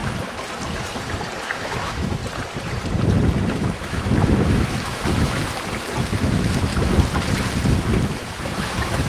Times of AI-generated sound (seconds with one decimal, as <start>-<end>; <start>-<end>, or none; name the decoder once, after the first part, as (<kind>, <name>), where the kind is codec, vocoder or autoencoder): 1.4-2.2 (autoencoder, DAC-VAE); 3.5-5.4; 6.0-6.7; 8.1-9.1